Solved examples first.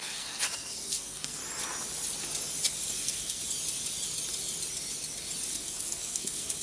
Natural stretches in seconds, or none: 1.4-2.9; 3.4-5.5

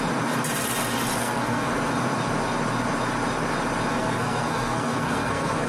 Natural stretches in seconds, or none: 0.0-1.2; 1.7-3.9

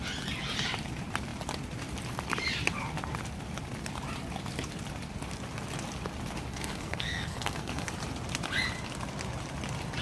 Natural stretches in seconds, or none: 0.0-6.5; 7.9-10.0

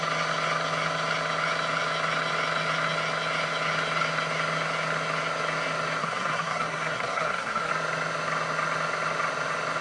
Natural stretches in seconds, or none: 0.0-6.0; 7.7-9.8

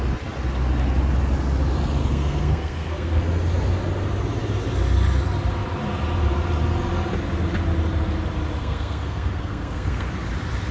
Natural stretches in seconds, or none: 0.0-2.0; 3.2-8.6; 10.1-10.7

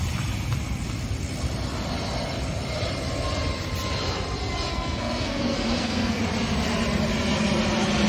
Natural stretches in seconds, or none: 0.0-4.7; 6.2-8.1

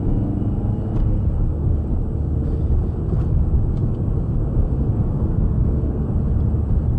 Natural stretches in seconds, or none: 0.0-1.0; 1.9-4.6; 6.1-7.0